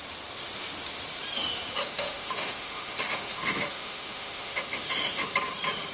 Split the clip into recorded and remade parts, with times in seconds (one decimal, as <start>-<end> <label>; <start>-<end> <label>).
0.0-1.8 recorded; 1.8-5.3 remade; 5.3-5.9 recorded

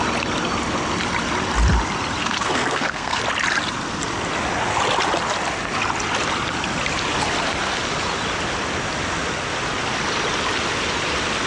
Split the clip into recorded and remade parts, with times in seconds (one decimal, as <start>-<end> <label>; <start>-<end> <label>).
0.0-2.2 recorded; 2.2-3.2 remade; 3.2-11.5 recorded

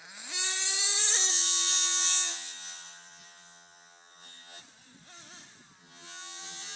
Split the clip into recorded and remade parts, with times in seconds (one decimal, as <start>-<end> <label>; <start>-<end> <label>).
0.0-1.3 recorded; 1.3-4.6 remade; 4.6-5.8 recorded; 5.8-6.8 remade

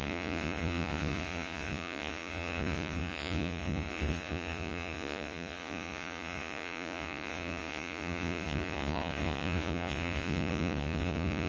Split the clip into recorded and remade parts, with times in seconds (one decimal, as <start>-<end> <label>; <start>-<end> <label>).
0.0-11.5 remade

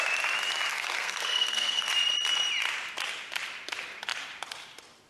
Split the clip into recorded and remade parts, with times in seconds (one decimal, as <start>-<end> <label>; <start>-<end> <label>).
0.0-0.7 recorded; 0.7-1.9 remade; 1.9-5.1 recorded

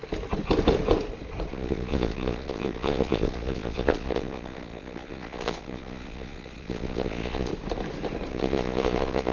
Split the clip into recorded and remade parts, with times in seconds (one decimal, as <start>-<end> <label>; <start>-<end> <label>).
0.0-1.5 recorded; 1.5-7.5 remade; 7.5-8.3 recorded; 8.3-9.3 remade

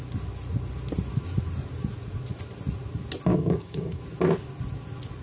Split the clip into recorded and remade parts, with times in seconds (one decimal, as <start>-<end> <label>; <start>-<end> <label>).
0.0-3.3 recorded; 3.3-4.0 remade; 4.0-5.2 recorded

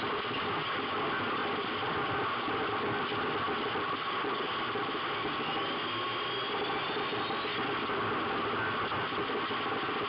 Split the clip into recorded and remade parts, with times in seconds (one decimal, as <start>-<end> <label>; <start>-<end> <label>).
0.0-1.4 recorded; 1.4-3.3 remade; 3.3-10.1 recorded